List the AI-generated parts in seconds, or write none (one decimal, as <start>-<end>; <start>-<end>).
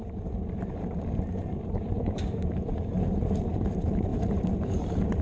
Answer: 0.0-5.2